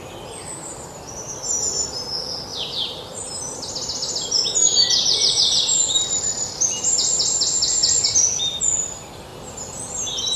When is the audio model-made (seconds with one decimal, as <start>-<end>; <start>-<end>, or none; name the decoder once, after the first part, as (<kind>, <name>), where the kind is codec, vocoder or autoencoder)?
2.5-3.4 (vocoder, BigVGAN v2)